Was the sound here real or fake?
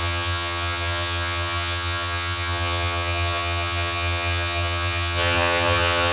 fake